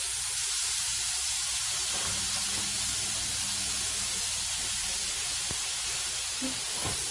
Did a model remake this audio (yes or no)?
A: yes